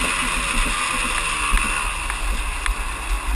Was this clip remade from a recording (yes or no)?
no